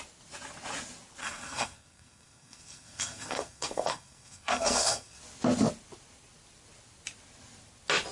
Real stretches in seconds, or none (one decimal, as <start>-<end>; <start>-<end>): 0.0-1.2; 5.2-8.1